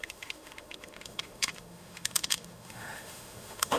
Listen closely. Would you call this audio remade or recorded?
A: remade